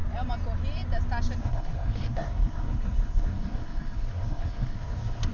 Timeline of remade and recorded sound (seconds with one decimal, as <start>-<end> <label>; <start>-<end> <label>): 0.0-1.4 recorded; 1.4-5.3 remade